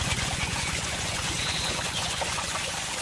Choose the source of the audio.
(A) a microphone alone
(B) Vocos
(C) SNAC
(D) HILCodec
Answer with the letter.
B